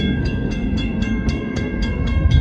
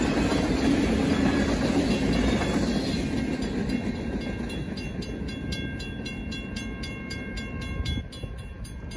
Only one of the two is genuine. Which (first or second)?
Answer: second